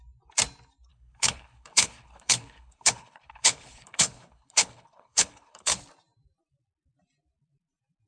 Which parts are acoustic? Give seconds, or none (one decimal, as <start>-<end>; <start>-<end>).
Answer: 0.0-0.9; 5.8-8.1